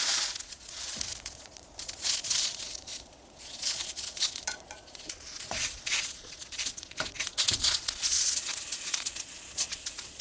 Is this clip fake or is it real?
fake